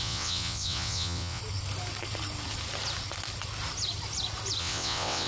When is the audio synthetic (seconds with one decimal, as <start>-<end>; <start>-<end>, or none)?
0.0-1.4; 4.6-5.3